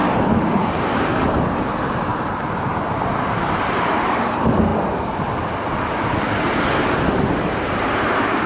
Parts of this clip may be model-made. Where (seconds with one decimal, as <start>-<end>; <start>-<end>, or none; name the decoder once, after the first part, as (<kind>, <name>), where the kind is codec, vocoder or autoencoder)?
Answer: 0.0-2.1 (vocoder, BigVGAN v2); 3.2-4.7; 5.8-8.5